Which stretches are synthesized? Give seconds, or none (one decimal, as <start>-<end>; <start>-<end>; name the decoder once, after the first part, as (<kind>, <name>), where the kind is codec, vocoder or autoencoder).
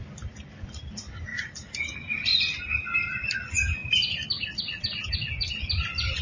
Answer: 1.3-1.9 (vocoder, BigVGAN v2)